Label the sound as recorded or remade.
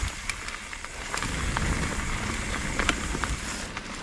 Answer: recorded